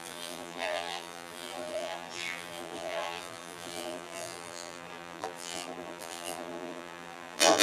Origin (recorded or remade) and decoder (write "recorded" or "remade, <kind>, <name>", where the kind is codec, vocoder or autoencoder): remade, vocoder, BigVGAN v2